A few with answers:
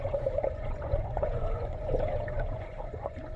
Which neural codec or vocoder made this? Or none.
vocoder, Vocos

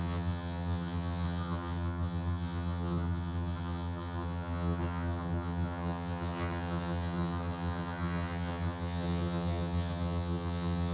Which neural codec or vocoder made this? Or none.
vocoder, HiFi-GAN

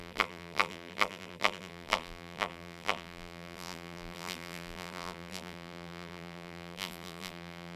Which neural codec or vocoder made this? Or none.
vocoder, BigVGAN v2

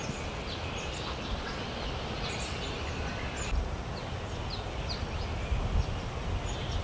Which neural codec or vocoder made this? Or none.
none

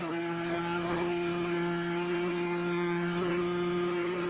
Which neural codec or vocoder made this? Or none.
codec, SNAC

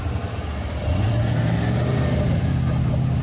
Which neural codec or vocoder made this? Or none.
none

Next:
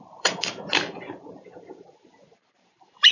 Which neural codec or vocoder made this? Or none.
vocoder, BigVGAN v2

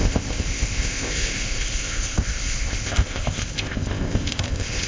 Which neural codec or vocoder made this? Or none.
codec, ZipCodec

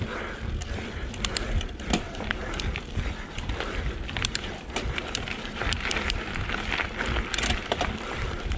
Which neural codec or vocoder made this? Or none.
vocoder, BigVGAN v2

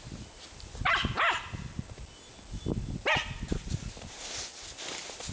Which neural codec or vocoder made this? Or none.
none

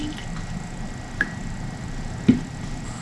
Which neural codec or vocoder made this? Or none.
none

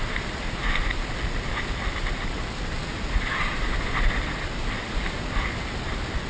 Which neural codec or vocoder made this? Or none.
none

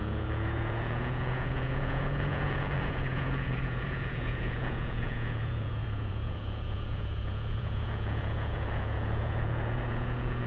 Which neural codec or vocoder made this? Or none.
vocoder, Vocos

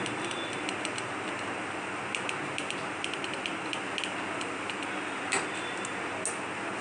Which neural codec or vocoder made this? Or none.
none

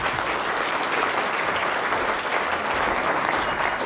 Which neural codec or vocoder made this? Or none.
none